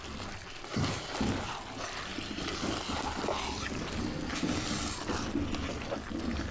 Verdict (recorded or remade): recorded